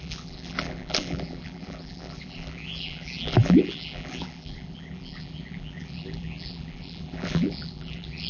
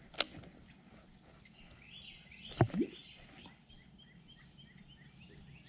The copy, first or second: first